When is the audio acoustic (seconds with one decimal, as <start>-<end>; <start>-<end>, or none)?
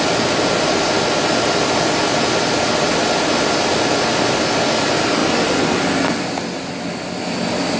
0.0-7.8